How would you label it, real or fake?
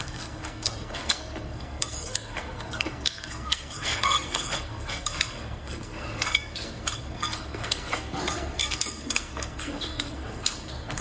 fake